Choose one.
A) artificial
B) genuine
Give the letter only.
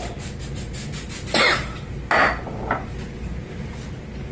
B